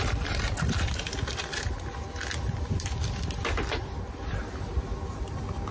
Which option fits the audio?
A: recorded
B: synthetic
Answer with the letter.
A